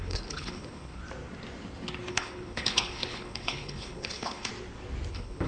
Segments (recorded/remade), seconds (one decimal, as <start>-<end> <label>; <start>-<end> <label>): 0.0-1.0 remade; 1.0-2.1 recorded; 2.1-4.5 remade; 4.5-5.1 recorded; 5.1-5.5 remade